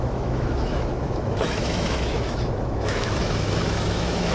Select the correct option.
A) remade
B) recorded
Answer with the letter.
A